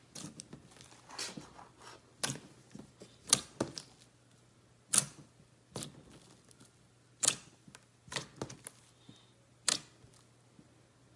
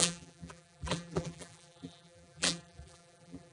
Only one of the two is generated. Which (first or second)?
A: second